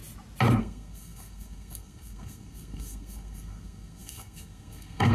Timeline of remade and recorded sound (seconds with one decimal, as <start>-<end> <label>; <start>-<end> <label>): 0.0-0.6 recorded; 0.6-5.1 remade